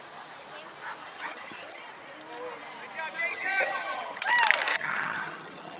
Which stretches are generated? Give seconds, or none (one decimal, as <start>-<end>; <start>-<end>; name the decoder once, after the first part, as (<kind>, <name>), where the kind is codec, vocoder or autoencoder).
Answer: 1.0-1.9 (vocoder, HiFi-GAN); 3.3-4.3; 4.7-5.8